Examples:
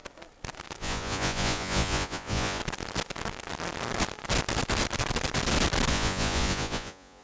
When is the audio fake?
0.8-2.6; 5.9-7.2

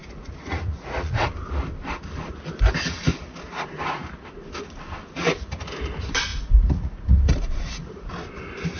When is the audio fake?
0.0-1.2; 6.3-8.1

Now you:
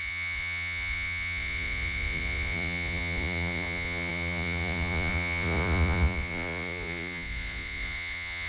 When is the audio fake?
0.0-8.5